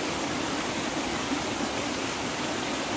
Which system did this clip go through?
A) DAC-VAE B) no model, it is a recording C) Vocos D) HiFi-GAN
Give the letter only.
B